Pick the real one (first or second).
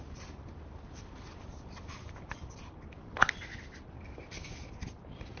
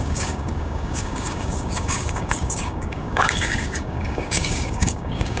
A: first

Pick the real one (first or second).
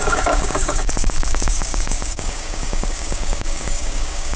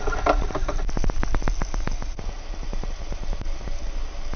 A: second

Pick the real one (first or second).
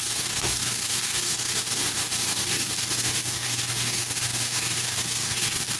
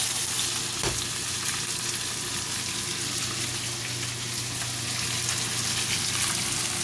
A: second